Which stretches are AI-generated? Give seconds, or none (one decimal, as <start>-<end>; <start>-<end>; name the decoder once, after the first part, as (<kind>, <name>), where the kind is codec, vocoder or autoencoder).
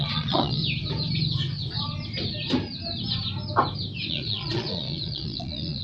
0.0-0.6 (vocoder, Vocos); 4.1-5.8